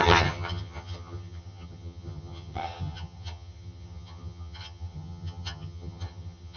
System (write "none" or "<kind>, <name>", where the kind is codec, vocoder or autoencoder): vocoder, HiFi-GAN